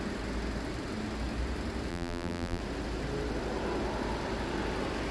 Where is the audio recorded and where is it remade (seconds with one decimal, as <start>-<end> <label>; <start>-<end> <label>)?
0.0-1.9 recorded; 1.9-2.6 remade; 2.6-5.1 recorded

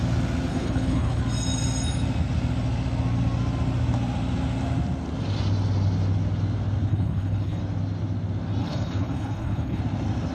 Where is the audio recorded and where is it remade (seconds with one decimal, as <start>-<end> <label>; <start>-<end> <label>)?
0.0-0.5 recorded; 0.5-1.2 remade; 1.2-6.9 recorded; 6.9-7.6 remade; 7.6-8.6 recorded; 8.6-9.8 remade; 9.8-10.3 recorded

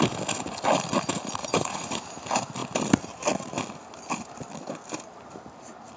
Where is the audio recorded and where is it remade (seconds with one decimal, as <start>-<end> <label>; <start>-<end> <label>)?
0.0-1.4 recorded; 1.4-2.0 remade; 2.0-6.0 recorded

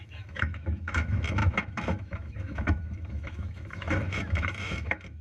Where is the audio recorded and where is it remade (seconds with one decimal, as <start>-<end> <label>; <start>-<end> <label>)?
0.0-5.2 remade

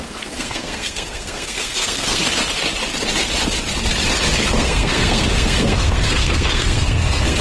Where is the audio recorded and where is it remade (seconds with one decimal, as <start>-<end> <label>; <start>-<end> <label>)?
0.0-2.2 remade; 2.2-4.5 recorded; 4.5-7.4 remade

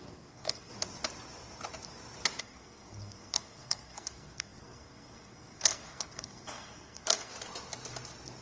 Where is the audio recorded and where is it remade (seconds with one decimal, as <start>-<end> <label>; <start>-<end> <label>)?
0.0-0.7 remade; 0.7-2.4 recorded; 2.4-7.3 remade; 7.3-8.4 recorded